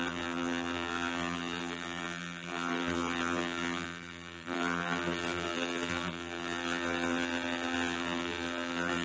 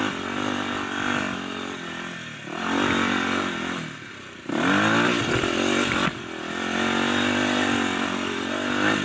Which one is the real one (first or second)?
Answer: second